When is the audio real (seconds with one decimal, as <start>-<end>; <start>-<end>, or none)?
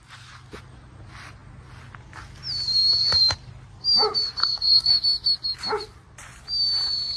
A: 0.0-4.4; 4.9-7.2